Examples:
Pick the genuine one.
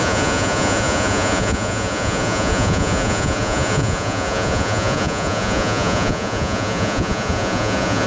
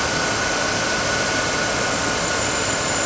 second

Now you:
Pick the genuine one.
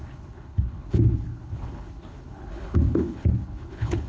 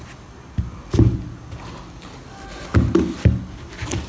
second